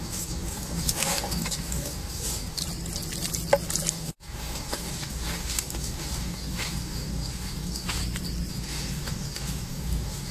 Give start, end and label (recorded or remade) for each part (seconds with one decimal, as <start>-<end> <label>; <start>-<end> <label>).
0.0-2.6 remade; 2.6-3.9 recorded; 3.9-8.0 remade; 8.0-8.5 recorded; 8.5-10.3 remade